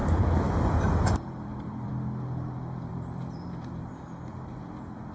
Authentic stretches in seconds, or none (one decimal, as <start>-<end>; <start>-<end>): 1.9-2.9; 4.6-5.1